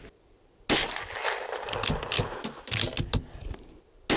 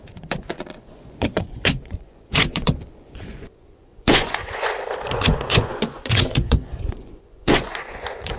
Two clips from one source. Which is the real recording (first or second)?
first